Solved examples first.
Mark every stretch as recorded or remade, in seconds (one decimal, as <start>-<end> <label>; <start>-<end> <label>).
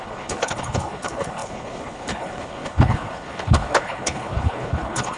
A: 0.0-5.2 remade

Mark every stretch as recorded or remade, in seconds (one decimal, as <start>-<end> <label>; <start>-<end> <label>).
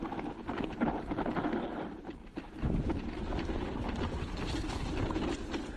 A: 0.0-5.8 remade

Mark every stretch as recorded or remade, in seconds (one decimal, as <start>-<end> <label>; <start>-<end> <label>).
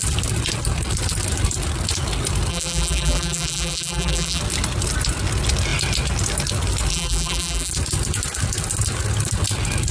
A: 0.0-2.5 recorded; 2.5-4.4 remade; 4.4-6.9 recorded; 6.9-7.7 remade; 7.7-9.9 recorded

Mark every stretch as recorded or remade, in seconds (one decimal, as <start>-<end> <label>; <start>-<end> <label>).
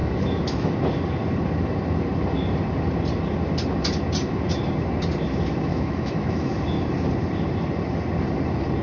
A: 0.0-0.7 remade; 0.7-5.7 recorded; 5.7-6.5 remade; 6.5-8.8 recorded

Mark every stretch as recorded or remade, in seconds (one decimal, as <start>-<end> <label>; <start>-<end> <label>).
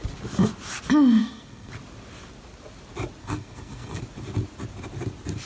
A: 0.0-1.2 recorded; 1.2-1.7 remade; 1.7-3.2 recorded; 3.2-4.0 remade; 4.0-5.5 recorded